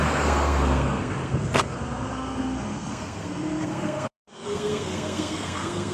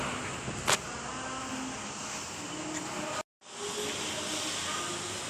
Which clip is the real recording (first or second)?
second